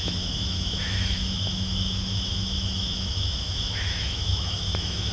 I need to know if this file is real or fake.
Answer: fake